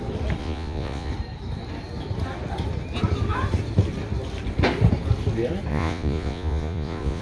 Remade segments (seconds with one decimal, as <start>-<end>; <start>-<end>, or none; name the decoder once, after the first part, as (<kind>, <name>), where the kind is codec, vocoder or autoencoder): 0.4-1.1 (vocoder, Vocos); 5.7-7.2